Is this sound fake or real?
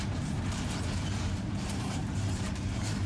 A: fake